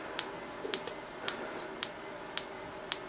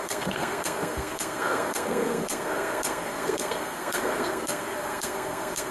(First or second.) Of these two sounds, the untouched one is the first